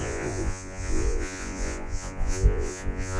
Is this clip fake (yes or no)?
yes